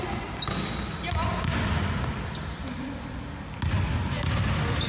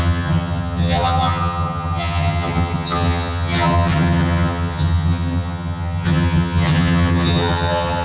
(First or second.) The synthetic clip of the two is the second